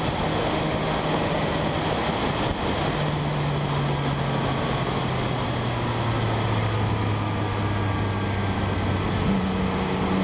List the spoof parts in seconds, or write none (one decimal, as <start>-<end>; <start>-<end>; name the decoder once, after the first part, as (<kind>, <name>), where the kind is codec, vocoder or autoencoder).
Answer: 0.4-1.0 (autoencoder, DAC-VAE)